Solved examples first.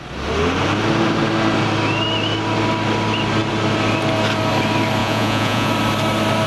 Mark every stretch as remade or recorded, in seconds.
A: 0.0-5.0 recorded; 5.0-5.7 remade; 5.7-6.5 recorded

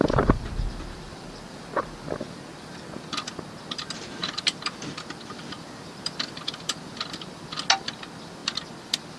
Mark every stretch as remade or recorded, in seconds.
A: 0.0-4.2 recorded; 4.2-4.9 remade; 4.9-5.4 recorded; 5.4-7.0 remade; 7.0-8.4 recorded; 8.4-9.2 remade

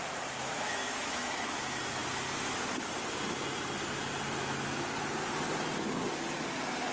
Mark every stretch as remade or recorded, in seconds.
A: 0.0-0.4 recorded; 0.4-1.6 remade; 1.6-6.9 recorded

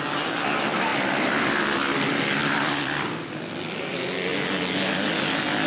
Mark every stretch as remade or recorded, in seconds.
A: 0.0-5.7 recorded

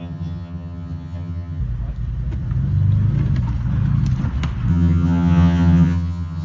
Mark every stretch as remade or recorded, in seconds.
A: 0.0-1.6 remade; 1.6-4.7 recorded; 4.7-6.4 remade

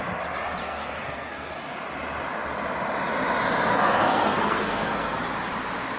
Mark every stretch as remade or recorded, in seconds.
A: 0.0-0.6 recorded; 0.6-1.5 remade; 1.5-3.7 recorded; 3.7-5.2 remade; 5.2-6.0 recorded

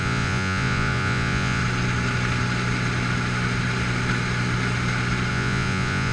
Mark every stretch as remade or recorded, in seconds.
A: 0.0-1.6 remade; 1.6-5.3 recorded; 5.3-6.1 remade

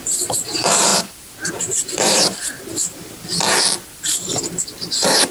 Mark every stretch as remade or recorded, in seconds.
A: 0.0-3.3 remade; 3.3-4.1 recorded; 4.1-5.3 remade